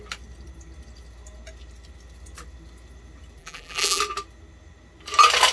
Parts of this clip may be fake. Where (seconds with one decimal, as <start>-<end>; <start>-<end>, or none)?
3.4-4.0